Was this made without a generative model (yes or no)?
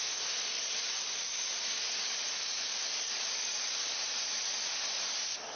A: no